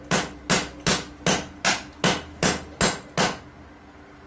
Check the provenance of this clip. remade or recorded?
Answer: recorded